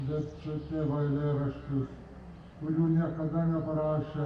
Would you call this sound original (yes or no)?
yes